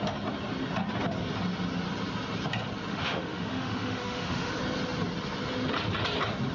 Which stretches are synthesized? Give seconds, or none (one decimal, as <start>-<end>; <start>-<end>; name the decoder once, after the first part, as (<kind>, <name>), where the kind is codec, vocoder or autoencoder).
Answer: 2.9-4.5 (autoencoder, DAC-VAE)